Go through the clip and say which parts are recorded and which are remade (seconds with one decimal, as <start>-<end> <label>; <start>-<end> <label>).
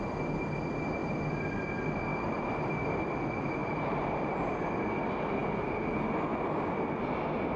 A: 0.0-2.1 recorded; 2.1-3.0 remade; 3.0-3.6 recorded; 3.6-4.7 remade; 4.7-7.6 recorded